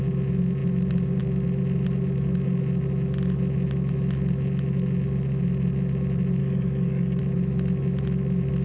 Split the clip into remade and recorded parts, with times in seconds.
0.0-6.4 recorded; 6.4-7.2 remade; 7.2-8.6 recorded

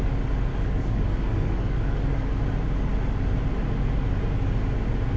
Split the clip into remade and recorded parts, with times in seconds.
0.0-0.5 recorded; 0.5-2.4 remade; 2.4-5.2 recorded

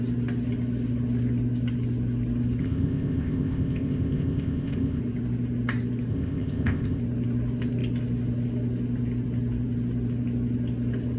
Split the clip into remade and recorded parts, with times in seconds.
0.0-2.6 recorded; 2.6-5.0 remade; 5.0-6.1 recorded; 6.1-7.0 remade; 7.0-11.2 recorded

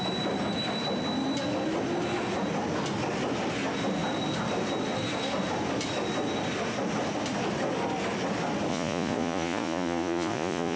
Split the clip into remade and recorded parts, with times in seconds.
0.0-8.7 recorded; 8.7-10.8 remade

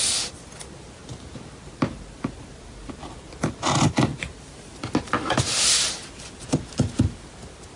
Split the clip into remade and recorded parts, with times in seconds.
0.0-7.8 recorded

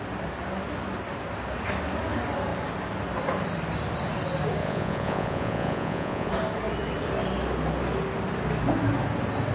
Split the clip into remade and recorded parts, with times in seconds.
0.0-4.6 recorded; 4.6-6.3 remade; 6.3-9.5 recorded